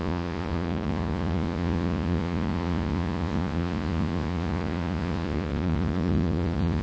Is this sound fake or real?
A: fake